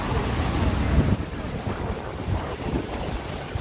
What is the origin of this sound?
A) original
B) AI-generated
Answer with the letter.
A